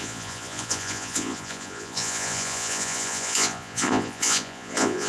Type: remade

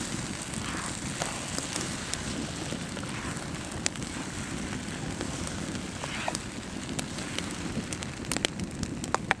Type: recorded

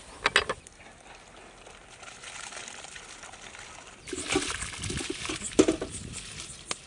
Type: recorded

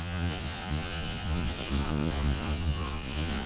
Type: remade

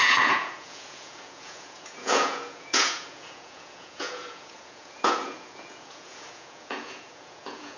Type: remade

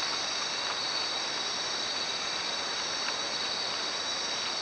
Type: recorded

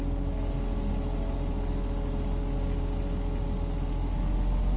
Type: recorded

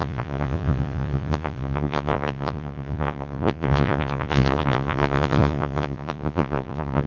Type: remade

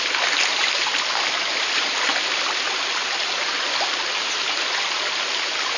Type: recorded